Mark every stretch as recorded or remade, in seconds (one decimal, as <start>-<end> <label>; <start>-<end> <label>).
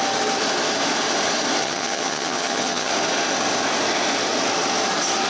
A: 0.0-1.6 recorded; 1.6-2.9 remade; 2.9-5.3 recorded